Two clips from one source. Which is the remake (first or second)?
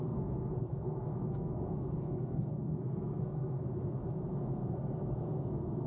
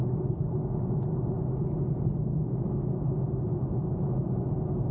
first